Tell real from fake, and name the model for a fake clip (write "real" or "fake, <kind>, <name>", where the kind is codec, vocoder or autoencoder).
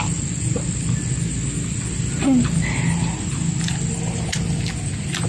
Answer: real